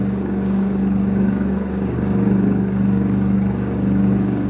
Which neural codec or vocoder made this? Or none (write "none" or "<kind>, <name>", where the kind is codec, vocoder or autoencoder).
codec, DAC